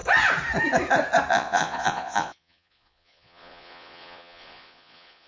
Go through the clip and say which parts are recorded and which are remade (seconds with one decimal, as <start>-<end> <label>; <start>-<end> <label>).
0.0-1.3 recorded; 1.3-5.3 remade